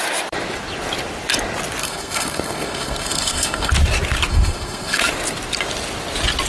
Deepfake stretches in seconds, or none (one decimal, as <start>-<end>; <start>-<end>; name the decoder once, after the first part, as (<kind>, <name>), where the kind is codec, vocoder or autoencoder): 1.8-3.7 (codec, SNAC); 4.3-5.0